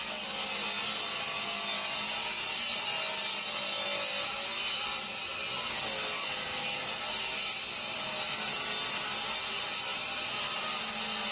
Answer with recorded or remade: recorded